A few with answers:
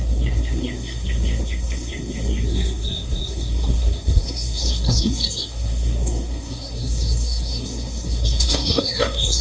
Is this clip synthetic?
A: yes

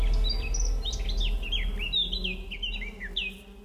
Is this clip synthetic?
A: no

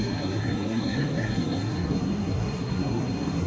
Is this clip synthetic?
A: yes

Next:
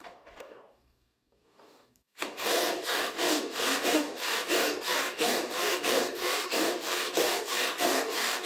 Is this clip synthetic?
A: yes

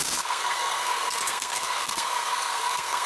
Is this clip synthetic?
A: yes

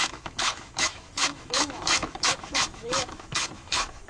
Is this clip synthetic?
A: yes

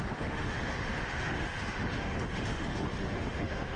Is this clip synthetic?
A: yes